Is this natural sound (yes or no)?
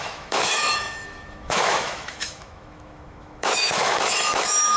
no